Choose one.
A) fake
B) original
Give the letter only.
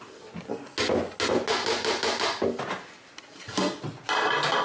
B